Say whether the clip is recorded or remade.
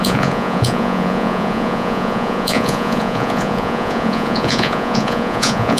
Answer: remade